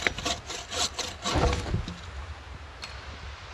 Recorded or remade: recorded